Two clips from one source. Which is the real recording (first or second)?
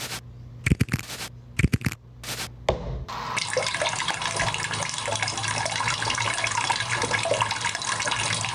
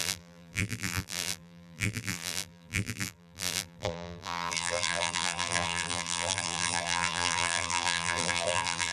first